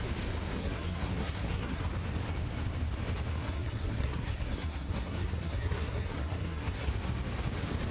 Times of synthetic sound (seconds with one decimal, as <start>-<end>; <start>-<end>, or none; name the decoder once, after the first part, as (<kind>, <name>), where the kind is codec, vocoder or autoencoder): 0.6-1.8 (codec, SNAC); 3.3-6.9